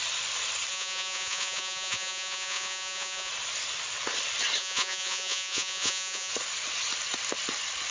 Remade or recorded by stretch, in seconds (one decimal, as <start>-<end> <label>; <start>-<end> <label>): 0.0-0.7 recorded; 0.7-3.3 remade; 3.3-4.6 recorded; 4.6-6.3 remade; 6.3-7.9 recorded